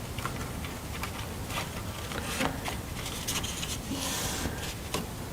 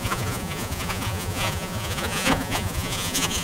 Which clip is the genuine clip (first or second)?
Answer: first